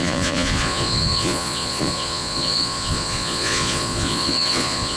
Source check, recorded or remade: remade